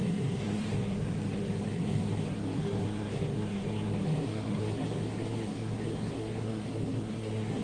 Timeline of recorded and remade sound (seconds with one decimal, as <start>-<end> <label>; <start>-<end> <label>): 0.0-7.6 remade